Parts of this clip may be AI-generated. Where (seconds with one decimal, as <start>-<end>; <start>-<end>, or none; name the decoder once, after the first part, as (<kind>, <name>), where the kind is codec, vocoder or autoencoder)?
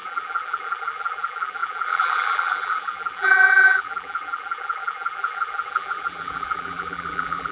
0.0-7.5 (vocoder, BigVGAN v2)